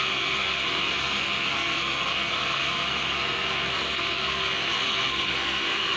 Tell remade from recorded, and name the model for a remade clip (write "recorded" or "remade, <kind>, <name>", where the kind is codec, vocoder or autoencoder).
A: remade, codec, SNAC